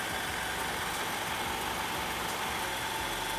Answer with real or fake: real